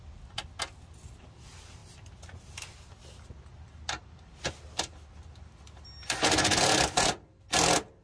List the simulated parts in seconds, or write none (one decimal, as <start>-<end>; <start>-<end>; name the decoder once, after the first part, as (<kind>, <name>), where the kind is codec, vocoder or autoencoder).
none